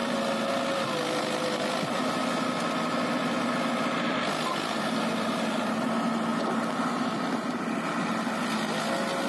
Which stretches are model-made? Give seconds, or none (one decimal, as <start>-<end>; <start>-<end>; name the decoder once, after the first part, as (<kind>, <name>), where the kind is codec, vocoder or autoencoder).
none